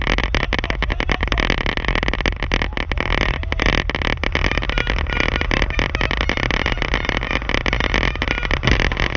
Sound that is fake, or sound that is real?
real